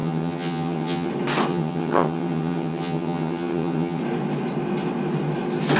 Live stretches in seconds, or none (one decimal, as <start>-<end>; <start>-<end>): 1.1-1.5; 4.0-5.8